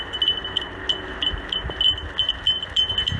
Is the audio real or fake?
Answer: real